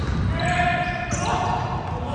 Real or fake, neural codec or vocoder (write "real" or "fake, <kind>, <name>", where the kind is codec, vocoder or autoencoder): real